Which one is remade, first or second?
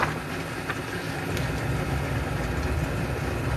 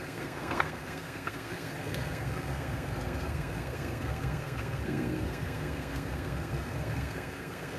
second